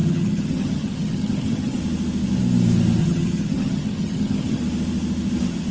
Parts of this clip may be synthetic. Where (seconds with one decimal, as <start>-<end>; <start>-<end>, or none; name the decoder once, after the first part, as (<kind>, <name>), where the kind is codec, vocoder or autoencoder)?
0.0-1.8 (vocoder, HiFi-GAN); 3.0-4.6